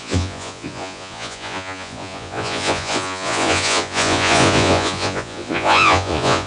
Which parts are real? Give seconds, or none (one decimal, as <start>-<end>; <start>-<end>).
none